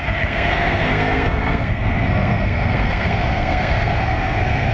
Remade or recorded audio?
remade